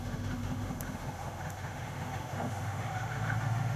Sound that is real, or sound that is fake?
fake